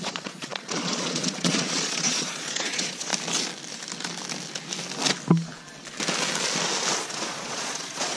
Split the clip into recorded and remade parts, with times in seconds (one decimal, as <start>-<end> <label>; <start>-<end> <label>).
0.0-3.1 remade; 3.1-7.0 recorded; 7.0-8.2 remade